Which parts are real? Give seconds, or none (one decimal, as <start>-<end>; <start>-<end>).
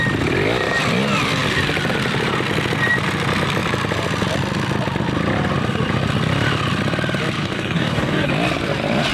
0.0-7.4; 8.3-9.1